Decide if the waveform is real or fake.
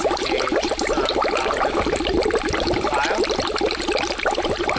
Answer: real